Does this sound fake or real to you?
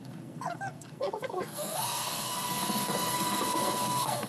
fake